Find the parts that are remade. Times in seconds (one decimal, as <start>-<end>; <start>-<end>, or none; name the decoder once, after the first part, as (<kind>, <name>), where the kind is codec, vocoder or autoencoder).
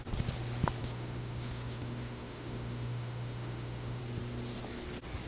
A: 0.8-4.0 (autoencoder, DAC-VAE)